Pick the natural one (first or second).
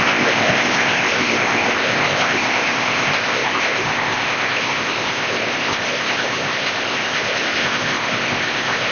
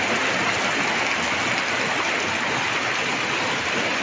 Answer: second